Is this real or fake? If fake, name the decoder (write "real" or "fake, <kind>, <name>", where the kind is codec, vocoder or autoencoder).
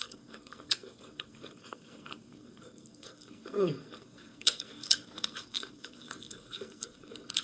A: fake, codec, SNAC